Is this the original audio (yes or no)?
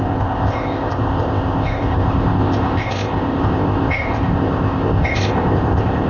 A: no